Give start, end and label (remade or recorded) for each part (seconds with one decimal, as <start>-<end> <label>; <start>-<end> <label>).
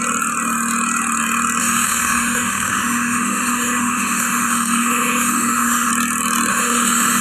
0.0-1.6 recorded; 1.6-5.9 remade; 5.9-6.5 recorded; 6.5-7.2 remade